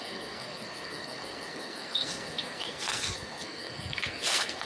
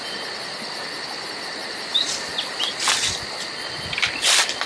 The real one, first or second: second